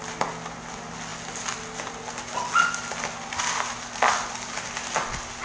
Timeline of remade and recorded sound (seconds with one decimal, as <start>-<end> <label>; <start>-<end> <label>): 0.0-5.4 recorded

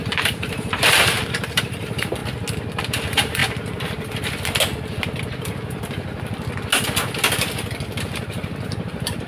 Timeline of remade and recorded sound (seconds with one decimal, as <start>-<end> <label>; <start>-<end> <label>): 0.0-2.2 remade; 2.2-2.8 recorded; 2.8-3.4 remade; 3.4-8.0 recorded; 8.0-9.3 remade

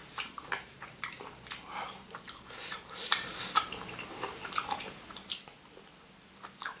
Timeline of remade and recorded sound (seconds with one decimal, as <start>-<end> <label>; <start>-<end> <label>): 0.0-2.2 remade; 2.2-2.6 recorded; 2.6-5.4 remade; 5.4-6.8 recorded

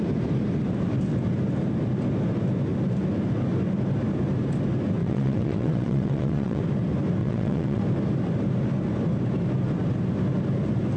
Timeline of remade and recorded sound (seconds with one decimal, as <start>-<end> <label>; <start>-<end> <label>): 0.0-5.0 recorded; 5.0-6.6 remade; 6.6-7.2 recorded; 7.2-7.8 remade; 7.8-11.0 recorded

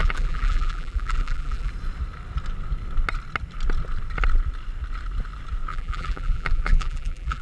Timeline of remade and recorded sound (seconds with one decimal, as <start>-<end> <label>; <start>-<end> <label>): 0.0-1.7 remade; 1.7-5.7 recorded; 5.7-7.4 remade

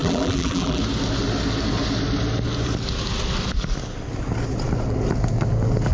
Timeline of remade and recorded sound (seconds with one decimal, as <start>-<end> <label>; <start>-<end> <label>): 0.0-0.8 remade; 0.8-5.9 recorded

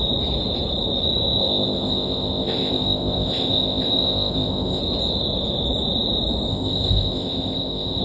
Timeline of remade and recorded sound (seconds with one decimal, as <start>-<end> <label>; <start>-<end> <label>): 0.0-1.4 recorded; 1.4-4.8 remade; 4.8-6.5 recorded; 6.5-8.0 remade

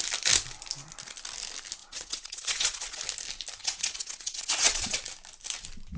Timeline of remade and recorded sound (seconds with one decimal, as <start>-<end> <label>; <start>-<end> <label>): 0.0-1.8 recorded; 1.8-3.0 remade; 3.0-3.6 recorded; 3.6-5.0 remade; 5.0-6.0 recorded